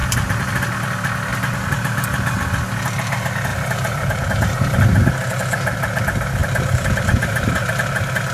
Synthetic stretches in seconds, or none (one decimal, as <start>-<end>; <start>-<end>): 0.0-0.6; 1.3-2.4; 3.5-4.8; 6.4-7.7